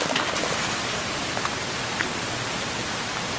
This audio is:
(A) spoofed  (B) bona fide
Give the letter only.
B